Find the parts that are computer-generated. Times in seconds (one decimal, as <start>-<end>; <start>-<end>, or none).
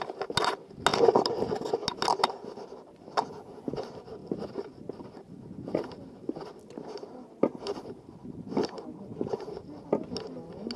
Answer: none